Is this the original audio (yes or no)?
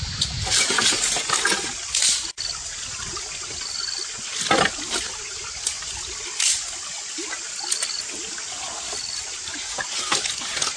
yes